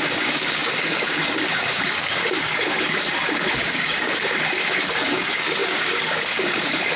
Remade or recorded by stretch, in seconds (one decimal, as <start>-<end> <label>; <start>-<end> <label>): 0.0-7.0 remade